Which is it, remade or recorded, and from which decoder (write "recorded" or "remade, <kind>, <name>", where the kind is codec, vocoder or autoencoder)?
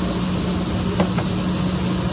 recorded